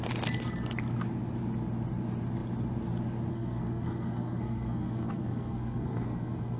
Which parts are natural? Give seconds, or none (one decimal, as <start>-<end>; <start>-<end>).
0.0-3.3